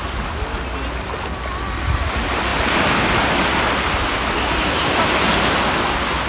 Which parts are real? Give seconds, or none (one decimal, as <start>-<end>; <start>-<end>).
0.0-6.3